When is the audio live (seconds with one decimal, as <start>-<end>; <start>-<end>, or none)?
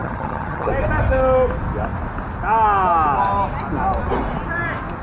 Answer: 0.7-5.0